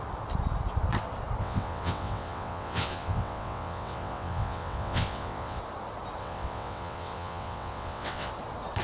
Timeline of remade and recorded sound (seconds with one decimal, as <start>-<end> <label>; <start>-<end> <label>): 0.0-1.4 recorded; 1.4-5.6 remade; 5.6-6.2 recorded; 6.2-8.3 remade; 8.3-8.8 recorded